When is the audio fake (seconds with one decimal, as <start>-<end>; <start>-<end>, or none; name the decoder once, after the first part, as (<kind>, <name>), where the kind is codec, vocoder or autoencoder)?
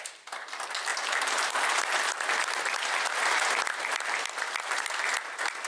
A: none